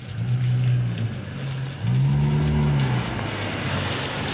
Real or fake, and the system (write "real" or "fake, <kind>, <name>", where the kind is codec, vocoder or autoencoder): real